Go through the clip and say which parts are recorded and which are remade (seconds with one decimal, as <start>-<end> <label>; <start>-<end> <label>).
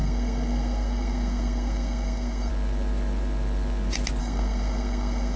0.0-2.5 remade; 2.5-4.2 recorded; 4.2-5.4 remade